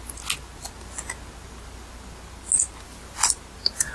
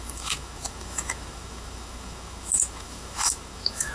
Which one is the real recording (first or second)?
first